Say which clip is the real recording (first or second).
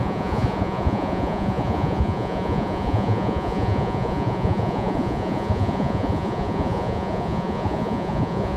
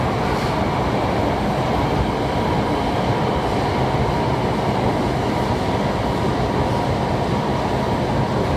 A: second